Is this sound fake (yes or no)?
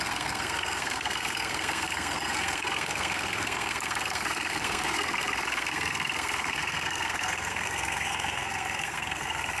yes